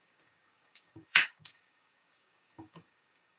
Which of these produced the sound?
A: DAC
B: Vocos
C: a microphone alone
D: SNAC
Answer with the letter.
A